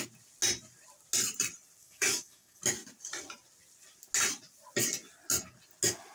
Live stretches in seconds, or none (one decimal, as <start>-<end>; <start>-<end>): 0.0-1.8; 2.6-6.1